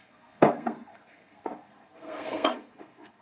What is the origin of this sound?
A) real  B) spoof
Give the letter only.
B